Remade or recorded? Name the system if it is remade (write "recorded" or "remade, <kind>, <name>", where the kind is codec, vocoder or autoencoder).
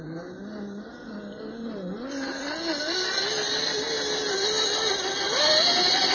recorded